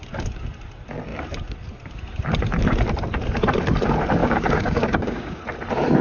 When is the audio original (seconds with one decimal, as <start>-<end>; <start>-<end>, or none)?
0.0-4.2; 5.4-6.0